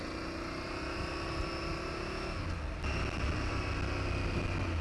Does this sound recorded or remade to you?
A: recorded